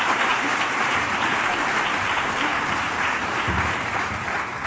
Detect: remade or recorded remade